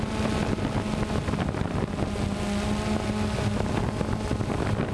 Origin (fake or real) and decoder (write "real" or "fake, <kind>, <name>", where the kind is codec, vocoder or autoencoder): real